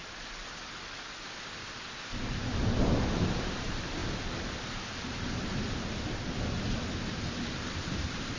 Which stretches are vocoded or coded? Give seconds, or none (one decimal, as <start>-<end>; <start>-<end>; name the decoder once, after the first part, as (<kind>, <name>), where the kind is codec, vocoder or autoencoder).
3.5-4.0 (vocoder, BigVGAN v2); 7.4-8.4